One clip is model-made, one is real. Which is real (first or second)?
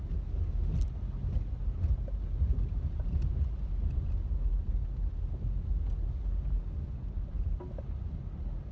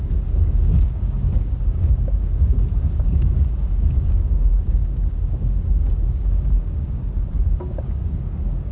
first